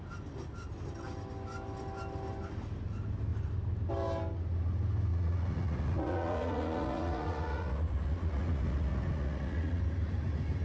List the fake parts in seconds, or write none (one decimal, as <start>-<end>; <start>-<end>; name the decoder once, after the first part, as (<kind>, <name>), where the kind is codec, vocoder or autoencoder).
5.1-9.8 (vocoder, Vocos)

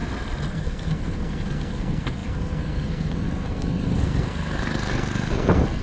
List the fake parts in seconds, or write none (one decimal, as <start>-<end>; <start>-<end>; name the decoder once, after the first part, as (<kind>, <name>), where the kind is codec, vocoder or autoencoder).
0.5-5.8 (codec, SNAC)

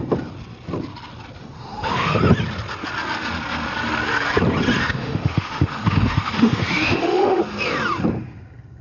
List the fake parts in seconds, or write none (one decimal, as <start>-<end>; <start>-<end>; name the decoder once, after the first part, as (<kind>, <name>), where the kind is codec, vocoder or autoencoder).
1.4-2.2 (autoencoder, DAC-VAE); 4.8-7.4

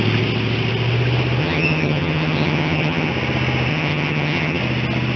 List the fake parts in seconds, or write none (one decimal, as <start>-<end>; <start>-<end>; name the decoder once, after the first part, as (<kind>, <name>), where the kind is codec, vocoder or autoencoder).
1.4-3.1 (vocoder, HiFi-GAN); 3.7-4.6

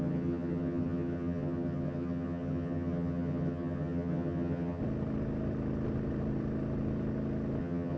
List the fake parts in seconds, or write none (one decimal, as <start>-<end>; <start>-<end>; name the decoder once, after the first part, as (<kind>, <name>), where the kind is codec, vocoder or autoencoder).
0.0-4.8 (vocoder, HiFi-GAN); 7.6-8.0

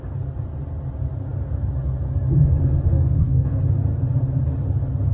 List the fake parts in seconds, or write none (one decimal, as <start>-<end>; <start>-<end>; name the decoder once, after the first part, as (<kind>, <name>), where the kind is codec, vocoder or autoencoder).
2.9-3.6 (codec, DAC)